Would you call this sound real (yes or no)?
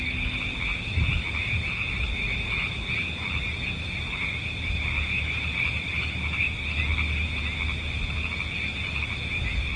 yes